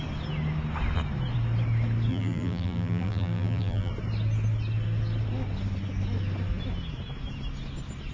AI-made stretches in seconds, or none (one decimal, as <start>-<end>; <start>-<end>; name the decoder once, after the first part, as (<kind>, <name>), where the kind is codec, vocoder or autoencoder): 2.1-3.9 (vocoder, BigVGAN v2)